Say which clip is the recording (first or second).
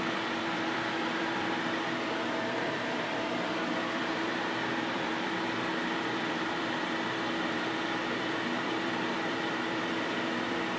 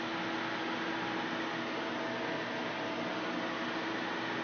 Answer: second